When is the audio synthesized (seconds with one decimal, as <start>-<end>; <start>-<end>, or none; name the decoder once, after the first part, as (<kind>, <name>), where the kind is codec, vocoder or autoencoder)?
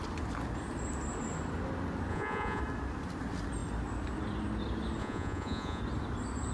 2.1-2.6 (vocoder, Vocos); 5.0-5.8